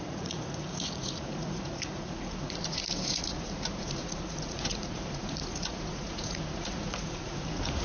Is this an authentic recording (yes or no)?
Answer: no